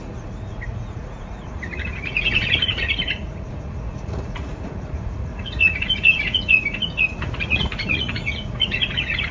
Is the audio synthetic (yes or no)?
yes